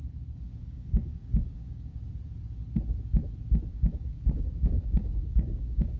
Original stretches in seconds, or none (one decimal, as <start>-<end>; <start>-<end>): 0.0-0.5; 2.1-3.7